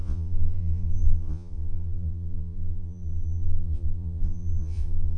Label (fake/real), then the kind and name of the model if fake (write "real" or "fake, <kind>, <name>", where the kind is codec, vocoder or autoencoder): fake, vocoder, Vocos